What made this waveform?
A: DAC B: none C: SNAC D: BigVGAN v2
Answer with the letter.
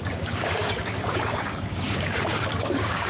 A